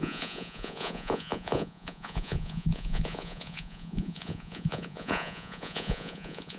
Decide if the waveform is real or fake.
fake